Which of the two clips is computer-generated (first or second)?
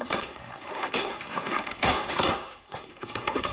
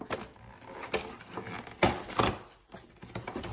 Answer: first